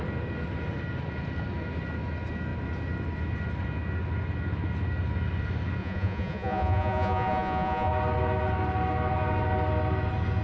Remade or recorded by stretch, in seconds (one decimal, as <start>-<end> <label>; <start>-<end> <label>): 0.0-5.8 recorded; 5.8-7.9 remade; 7.9-10.4 recorded